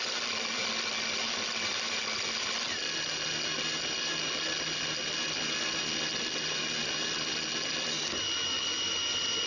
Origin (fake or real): real